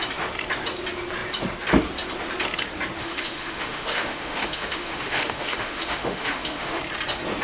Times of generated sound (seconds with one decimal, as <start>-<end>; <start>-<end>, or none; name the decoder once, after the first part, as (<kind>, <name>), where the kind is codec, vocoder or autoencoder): 3.0-6.8 (autoencoder, DAC-VAE)